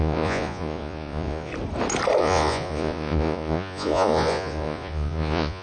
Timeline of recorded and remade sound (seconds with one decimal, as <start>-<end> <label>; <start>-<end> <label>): 0.0-1.5 remade; 1.5-2.2 recorded; 2.2-5.6 remade